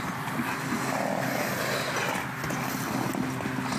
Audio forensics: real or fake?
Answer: real